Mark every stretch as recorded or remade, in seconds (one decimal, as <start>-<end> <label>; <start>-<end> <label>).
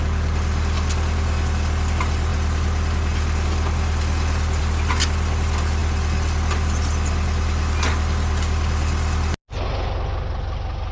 0.0-10.9 recorded